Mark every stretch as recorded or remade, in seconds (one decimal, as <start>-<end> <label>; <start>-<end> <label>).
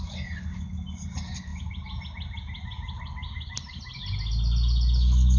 0.0-5.4 recorded